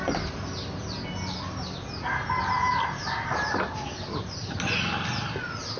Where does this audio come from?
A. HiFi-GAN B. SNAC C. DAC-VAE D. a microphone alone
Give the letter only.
D